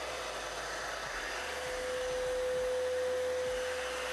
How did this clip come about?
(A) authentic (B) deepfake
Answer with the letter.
A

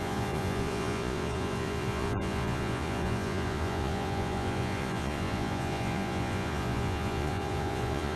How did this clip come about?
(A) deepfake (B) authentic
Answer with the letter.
A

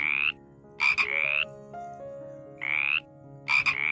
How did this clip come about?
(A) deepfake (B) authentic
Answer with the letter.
B